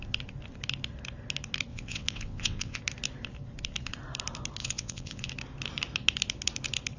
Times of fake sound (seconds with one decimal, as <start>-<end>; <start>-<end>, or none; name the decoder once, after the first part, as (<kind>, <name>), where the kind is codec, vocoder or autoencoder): 1.7-2.8 (vocoder, WaveNeXt); 4.6-5.3